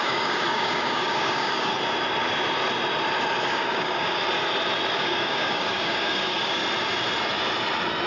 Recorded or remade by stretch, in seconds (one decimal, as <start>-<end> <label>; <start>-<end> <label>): 0.0-1.7 remade; 1.7-3.4 recorded; 3.4-4.2 remade; 4.2-4.9 recorded; 4.9-6.6 remade; 6.6-8.1 recorded